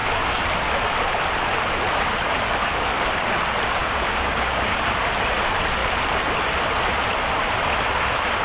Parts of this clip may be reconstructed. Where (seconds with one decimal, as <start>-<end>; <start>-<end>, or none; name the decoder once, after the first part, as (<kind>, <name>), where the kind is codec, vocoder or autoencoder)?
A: 3.8-4.8 (codec, DAC)